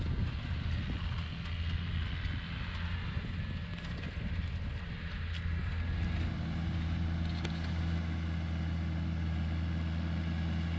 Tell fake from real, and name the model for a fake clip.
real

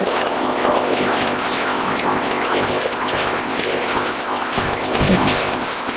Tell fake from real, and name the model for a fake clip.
fake, codec, ZipCodec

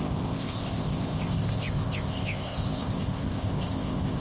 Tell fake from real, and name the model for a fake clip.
fake, codec, ZipCodec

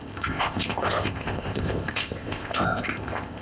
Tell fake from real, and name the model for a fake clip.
fake, codec, ZipCodec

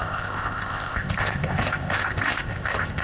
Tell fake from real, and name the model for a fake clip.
fake, codec, ZipCodec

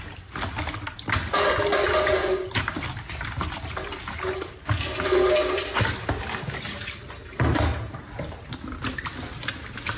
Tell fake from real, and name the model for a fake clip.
real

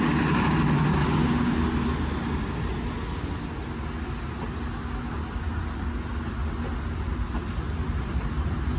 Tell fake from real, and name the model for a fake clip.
real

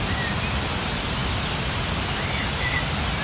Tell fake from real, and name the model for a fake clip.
real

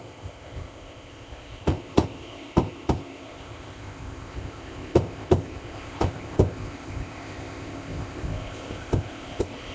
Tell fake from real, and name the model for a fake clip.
fake, codec, ZipCodec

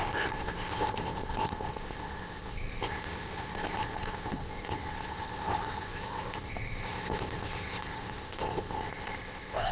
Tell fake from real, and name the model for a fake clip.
fake, codec, ZipCodec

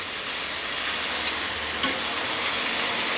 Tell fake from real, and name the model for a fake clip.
real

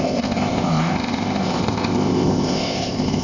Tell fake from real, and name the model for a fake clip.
fake, codec, ZipCodec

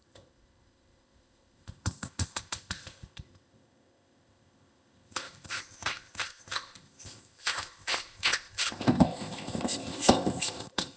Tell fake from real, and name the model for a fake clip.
fake, codec, ZipCodec